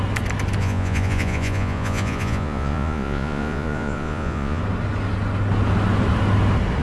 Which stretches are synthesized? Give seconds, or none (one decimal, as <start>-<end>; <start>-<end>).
0.6-4.6